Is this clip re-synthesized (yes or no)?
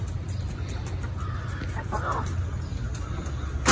no